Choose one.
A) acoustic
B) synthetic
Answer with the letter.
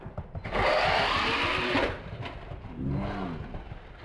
A